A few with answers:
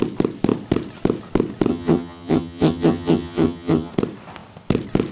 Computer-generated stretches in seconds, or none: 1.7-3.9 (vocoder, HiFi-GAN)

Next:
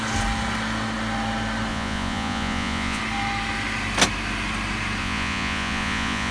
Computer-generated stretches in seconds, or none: 1.7-3.0 (vocoder, Vocos); 5.0-6.3

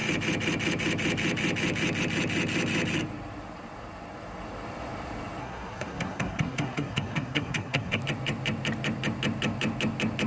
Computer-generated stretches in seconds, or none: 5.4-8.0 (codec, SNAC)

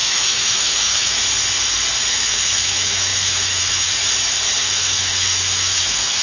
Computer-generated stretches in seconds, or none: 0.0-1.2 (autoencoder, DAC-VAE); 2.1-4.0; 4.6-6.2

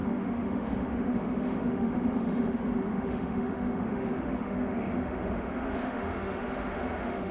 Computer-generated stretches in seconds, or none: 0.0-7.3 (autoencoder, DAC-VAE)

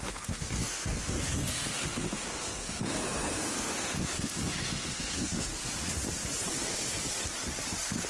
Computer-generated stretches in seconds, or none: 0.0-5.5 (codec, SNAC)